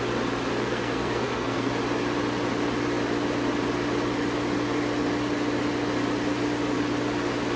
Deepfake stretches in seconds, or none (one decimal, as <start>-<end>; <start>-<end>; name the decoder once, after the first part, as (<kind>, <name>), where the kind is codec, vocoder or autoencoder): 0.6-1.7 (codec, SNAC)